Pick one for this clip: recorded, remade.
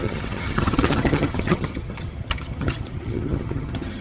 remade